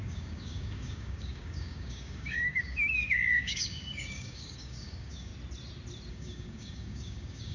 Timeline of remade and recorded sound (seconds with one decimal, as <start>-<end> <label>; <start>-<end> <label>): 0.0-5.3 remade; 5.3-6.1 recorded; 6.1-7.5 remade